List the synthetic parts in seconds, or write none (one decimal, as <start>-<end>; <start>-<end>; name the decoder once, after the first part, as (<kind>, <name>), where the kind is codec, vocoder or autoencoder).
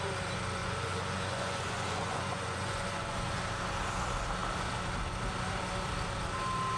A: 0.6-3.4 (vocoder, Vocos)